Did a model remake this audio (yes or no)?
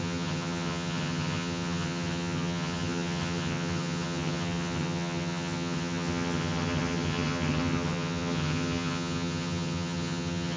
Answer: yes